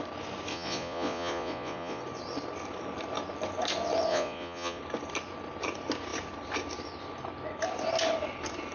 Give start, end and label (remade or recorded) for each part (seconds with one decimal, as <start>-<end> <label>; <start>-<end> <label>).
0.0-0.5 recorded; 0.5-2.0 remade; 2.0-4.1 recorded; 4.1-4.8 remade; 4.8-8.7 recorded

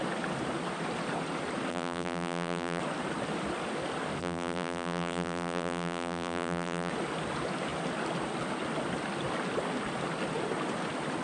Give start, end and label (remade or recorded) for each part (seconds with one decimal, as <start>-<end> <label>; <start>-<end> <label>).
0.0-1.7 recorded; 1.7-2.8 remade; 2.8-4.2 recorded; 4.2-6.9 remade; 6.9-11.2 recorded

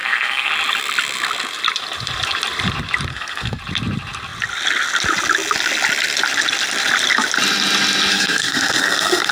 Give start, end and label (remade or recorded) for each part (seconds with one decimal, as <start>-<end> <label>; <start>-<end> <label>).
0.0-0.5 remade; 0.5-3.1 recorded; 3.1-3.6 remade; 3.6-8.1 recorded; 8.1-9.3 remade

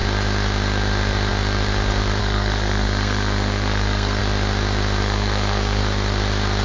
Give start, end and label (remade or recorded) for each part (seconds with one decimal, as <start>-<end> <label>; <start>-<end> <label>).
0.0-2.2 recorded; 2.2-4.2 remade; 4.2-5.0 recorded; 5.0-5.8 remade; 5.8-6.6 recorded

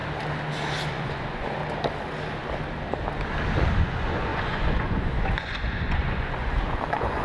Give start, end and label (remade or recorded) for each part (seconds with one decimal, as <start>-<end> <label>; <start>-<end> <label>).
0.0-0.9 recorded; 0.9-1.6 remade; 1.6-3.8 recorded; 3.8-7.2 remade

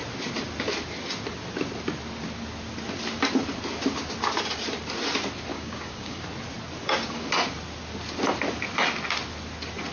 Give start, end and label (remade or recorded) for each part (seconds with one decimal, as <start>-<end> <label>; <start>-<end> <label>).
0.0-5.5 recorded; 5.5-6.2 remade; 6.2-6.8 recorded; 6.8-7.3 remade; 7.3-9.9 recorded